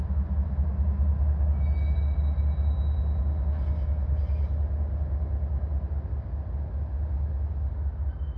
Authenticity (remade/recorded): recorded